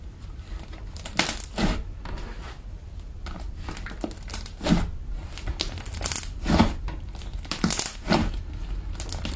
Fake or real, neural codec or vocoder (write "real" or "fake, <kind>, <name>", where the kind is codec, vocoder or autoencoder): real